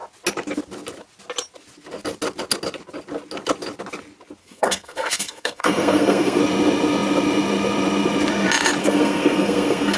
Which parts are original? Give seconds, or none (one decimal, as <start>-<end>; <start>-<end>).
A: 0.0-4.4; 6.4-8.8